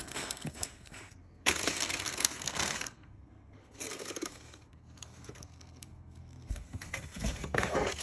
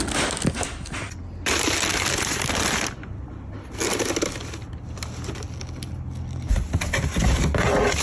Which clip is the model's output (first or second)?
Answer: first